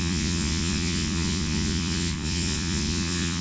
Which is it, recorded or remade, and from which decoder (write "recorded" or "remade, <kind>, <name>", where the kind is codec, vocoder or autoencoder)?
remade, vocoder, Vocos